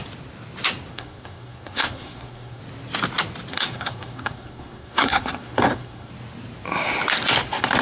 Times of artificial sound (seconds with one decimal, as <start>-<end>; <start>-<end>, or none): 0.9-2.6; 3.5-6.1